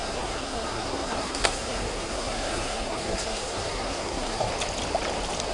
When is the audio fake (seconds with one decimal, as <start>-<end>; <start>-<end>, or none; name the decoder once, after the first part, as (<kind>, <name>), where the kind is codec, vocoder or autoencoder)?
0.0-4.5 (codec, SNAC)